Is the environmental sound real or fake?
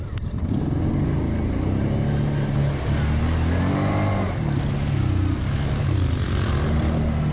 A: real